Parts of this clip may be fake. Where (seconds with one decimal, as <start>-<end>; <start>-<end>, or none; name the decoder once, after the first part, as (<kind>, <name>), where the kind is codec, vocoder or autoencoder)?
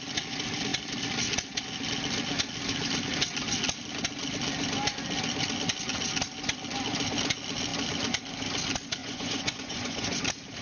9.0-10.2 (vocoder, Vocos)